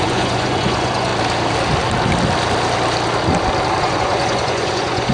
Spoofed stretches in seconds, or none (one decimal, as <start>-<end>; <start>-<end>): 0.0-1.1; 3.8-5.1